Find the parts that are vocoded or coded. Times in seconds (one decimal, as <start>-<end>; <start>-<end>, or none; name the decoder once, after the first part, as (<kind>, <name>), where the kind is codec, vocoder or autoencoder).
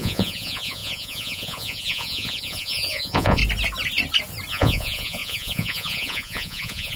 0.0-3.4 (vocoder, Vocos); 4.5-7.0